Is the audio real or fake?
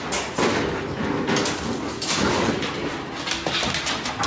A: real